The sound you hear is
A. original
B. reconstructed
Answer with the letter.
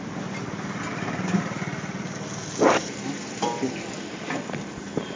A